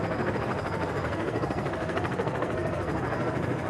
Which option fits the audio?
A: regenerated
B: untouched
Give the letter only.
A